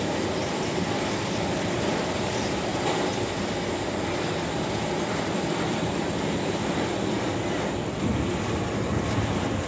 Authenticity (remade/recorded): recorded